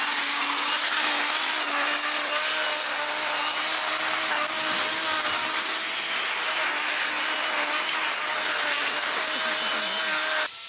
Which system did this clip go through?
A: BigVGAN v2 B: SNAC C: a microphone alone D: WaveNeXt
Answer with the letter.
C